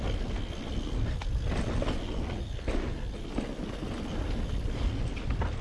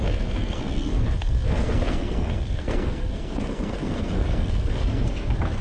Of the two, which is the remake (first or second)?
second